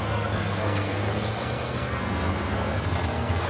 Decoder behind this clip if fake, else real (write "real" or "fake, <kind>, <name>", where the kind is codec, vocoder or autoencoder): fake, codec, SNAC